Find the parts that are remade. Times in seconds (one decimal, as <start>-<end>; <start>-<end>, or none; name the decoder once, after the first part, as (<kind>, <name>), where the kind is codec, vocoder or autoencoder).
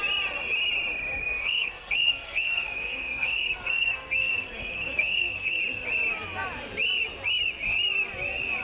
1.2-5.6 (codec, SNAC)